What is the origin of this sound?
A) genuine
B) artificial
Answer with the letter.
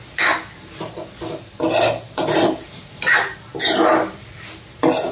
A